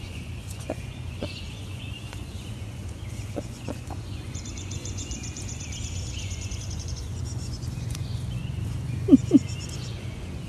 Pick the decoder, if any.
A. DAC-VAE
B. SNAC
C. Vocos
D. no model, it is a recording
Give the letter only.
C